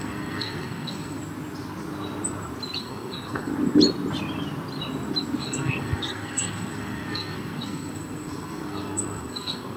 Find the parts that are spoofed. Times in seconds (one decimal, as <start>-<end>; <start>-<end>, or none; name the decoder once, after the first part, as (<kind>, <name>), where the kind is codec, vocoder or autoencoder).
0.0-1.2 (codec, SNAC); 2.8-3.5; 5.4-9.8